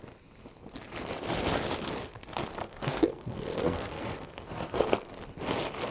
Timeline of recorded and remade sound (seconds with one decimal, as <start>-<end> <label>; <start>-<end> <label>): 0.0-2.6 recorded; 2.6-4.8 remade; 4.8-5.9 recorded